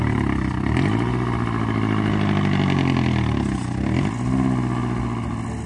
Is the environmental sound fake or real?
real